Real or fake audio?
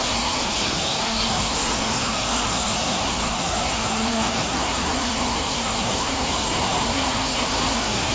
fake